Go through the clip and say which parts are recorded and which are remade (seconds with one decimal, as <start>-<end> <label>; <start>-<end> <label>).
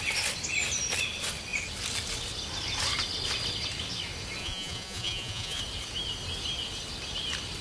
0.0-4.4 recorded; 4.4-5.6 remade; 5.6-7.6 recorded